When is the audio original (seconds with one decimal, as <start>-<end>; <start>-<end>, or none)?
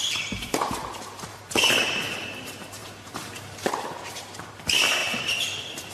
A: 0.0-5.9